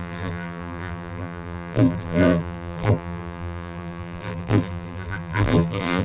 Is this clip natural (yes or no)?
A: no